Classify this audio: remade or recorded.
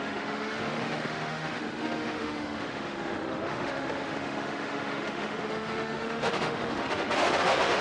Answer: remade